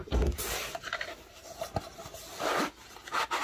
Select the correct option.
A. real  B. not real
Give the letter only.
A